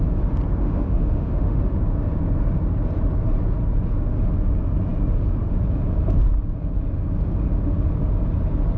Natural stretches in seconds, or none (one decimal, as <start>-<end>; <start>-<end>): 0.0-0.6; 1.6-8.8

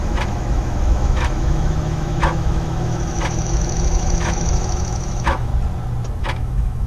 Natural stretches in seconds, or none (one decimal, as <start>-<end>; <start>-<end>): 5.5-6.2

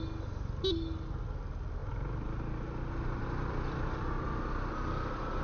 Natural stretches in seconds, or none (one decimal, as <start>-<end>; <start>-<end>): 0.0-5.4

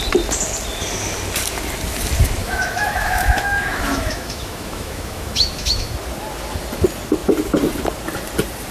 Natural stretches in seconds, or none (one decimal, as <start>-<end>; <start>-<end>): 0.0-2.4; 5.9-8.7